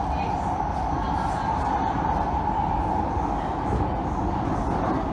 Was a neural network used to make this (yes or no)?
no